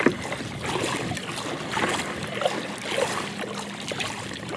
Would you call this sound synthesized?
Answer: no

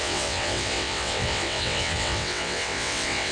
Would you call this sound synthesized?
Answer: yes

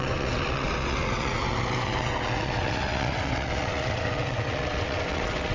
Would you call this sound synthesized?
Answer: yes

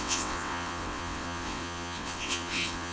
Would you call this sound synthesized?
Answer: yes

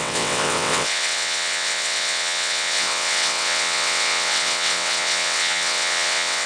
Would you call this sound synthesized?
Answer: yes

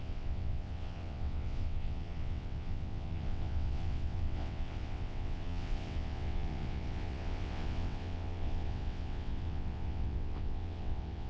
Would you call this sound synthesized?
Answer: yes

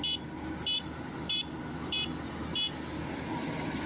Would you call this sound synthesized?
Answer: no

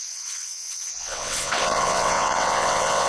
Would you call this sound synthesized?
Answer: yes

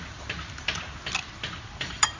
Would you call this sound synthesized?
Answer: no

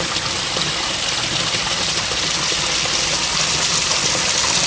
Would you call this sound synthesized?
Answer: no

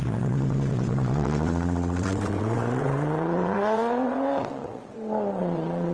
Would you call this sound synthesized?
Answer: yes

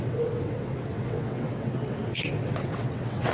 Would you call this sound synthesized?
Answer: yes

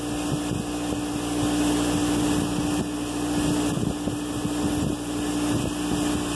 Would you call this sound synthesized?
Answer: no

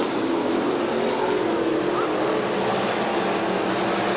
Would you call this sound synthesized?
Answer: no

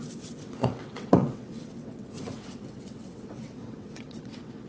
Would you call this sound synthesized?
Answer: yes